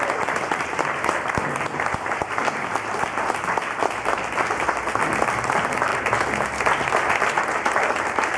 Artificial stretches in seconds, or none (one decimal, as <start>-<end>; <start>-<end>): none